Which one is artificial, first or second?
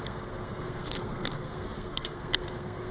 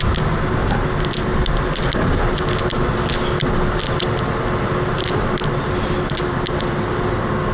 first